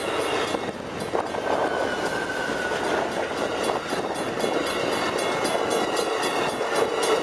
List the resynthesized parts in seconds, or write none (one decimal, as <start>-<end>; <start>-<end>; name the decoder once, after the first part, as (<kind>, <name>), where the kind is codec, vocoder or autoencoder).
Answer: none